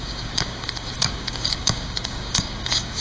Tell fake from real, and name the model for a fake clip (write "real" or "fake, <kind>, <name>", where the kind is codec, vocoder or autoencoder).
fake, codec, DAC